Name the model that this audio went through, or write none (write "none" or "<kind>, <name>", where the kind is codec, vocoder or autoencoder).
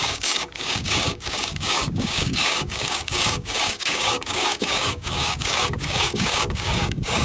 codec, DAC